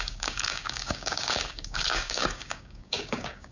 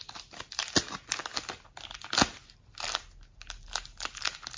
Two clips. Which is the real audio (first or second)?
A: second